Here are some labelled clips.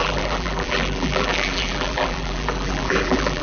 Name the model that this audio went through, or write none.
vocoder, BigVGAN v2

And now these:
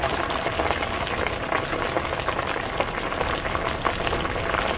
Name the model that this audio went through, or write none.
none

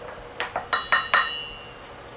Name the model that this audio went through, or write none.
none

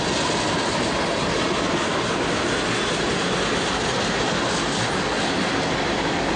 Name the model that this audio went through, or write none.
none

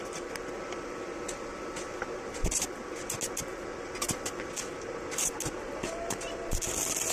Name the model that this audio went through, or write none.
none